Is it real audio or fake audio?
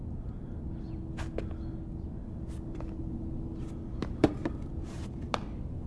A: real